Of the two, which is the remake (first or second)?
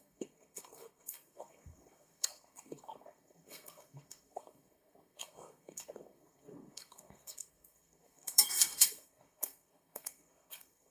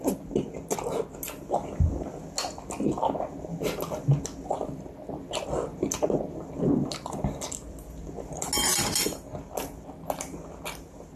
first